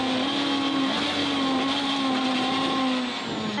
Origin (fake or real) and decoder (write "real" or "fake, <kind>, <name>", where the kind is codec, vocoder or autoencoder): real